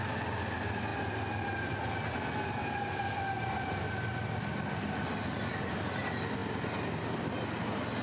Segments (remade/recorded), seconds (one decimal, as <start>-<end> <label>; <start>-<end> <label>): 0.0-8.0 recorded